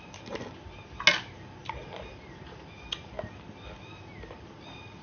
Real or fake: real